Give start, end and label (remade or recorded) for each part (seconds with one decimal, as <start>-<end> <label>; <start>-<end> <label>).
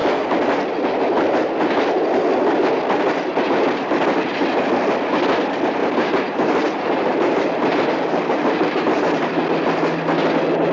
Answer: 0.0-5.8 recorded; 5.8-9.4 remade; 9.4-10.7 recorded